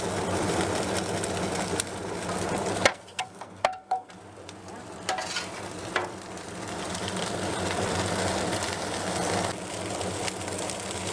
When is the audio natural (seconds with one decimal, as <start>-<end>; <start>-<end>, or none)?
0.0-2.9; 4.1-11.1